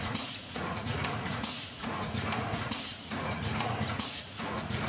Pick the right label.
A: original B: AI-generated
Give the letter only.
B